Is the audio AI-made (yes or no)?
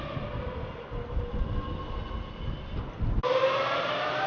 no